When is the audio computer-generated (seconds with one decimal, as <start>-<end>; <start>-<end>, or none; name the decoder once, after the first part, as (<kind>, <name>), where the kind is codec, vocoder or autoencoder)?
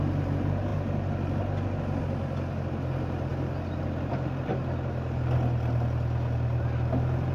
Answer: none